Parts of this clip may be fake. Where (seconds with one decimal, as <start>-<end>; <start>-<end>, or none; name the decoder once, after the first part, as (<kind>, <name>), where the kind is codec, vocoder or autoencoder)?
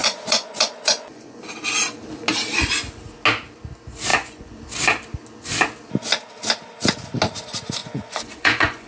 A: 0.0-1.4 (vocoder, Vocos); 4.1-4.6; 7.8-8.9